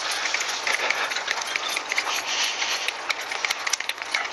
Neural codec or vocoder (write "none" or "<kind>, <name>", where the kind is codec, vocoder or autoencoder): vocoder, Vocos